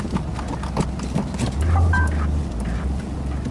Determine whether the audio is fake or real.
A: real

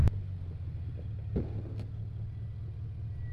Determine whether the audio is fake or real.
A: real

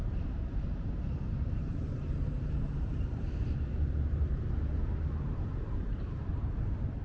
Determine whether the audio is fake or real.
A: fake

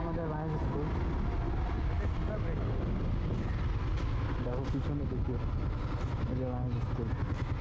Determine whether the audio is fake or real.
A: real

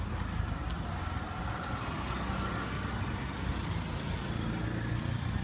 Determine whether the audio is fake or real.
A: real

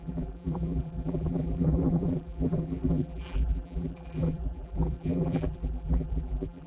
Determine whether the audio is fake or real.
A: fake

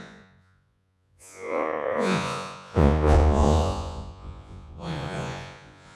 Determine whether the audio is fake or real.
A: fake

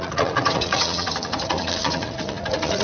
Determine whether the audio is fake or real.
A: fake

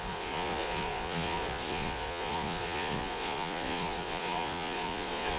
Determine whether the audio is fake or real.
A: fake